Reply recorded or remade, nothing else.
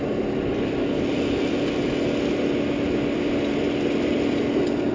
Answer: recorded